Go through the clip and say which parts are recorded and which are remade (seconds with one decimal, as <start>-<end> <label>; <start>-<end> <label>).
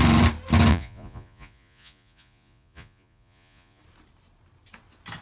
0.0-0.7 recorded; 0.7-3.8 remade; 3.8-5.2 recorded